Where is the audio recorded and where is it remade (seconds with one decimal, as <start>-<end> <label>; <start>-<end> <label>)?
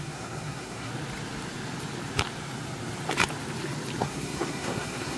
0.0-0.9 remade; 0.9-4.0 recorded; 4.0-5.2 remade